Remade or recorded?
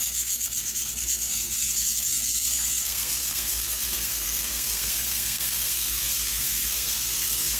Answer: remade